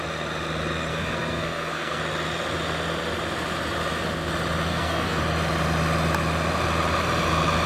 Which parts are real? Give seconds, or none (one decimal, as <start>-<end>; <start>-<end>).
0.0-0.9; 2.0-4.7; 5.2-7.7